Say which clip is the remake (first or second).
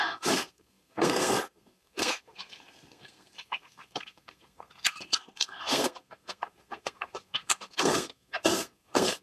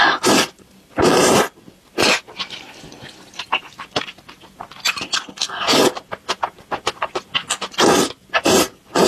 first